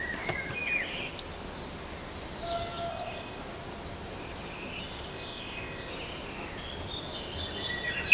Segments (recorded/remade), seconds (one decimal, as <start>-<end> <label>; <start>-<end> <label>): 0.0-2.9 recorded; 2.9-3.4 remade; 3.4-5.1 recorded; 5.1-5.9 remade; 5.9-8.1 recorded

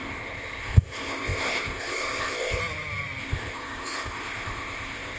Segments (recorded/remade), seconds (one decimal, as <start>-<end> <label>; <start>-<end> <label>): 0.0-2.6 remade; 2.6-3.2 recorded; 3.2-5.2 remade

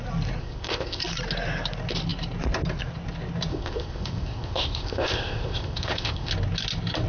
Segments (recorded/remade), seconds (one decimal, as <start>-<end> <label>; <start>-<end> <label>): 0.0-0.4 recorded; 0.4-1.0 remade; 1.0-3.5 recorded; 3.5-6.3 remade; 6.3-7.1 recorded

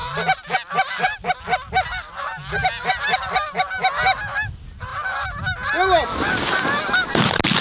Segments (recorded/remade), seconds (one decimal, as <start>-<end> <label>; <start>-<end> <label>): 0.0-7.6 recorded

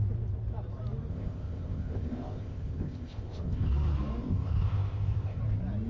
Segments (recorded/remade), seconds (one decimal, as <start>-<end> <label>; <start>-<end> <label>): 0.0-1.1 recorded; 1.1-3.7 remade; 3.7-4.2 recorded; 4.2-5.4 remade; 5.4-5.9 recorded

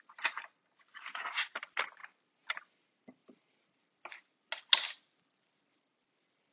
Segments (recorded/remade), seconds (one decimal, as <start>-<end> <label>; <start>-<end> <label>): 0.0-6.5 recorded

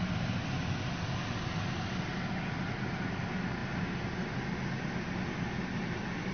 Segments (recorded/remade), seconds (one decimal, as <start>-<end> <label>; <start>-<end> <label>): 0.0-6.3 recorded

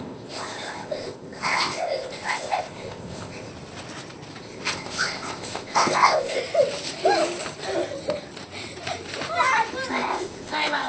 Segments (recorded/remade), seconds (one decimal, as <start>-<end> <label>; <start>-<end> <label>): 0.0-3.5 remade; 3.5-4.4 recorded; 4.4-6.4 remade; 6.4-9.9 recorded; 9.9-10.9 remade